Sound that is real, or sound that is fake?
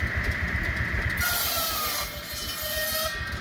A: real